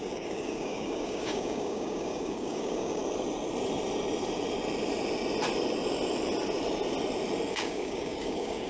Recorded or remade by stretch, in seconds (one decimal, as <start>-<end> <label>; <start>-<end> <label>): 0.0-3.0 remade; 3.0-7.5 recorded; 7.5-8.7 remade